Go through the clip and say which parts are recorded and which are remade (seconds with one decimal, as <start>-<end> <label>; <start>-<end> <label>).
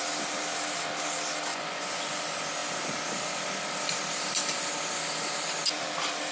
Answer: 0.0-1.5 recorded; 1.5-2.2 remade; 2.2-6.3 recorded